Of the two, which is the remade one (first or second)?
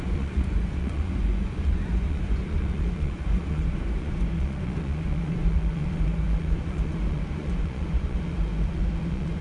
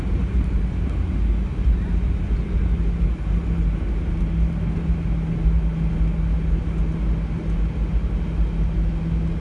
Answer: first